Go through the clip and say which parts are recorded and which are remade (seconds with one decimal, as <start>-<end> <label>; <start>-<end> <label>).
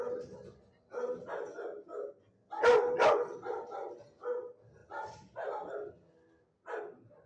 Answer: 0.0-7.3 recorded